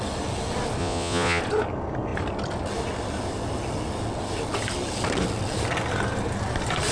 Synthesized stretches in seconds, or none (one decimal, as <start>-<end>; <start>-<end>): 0.8-1.4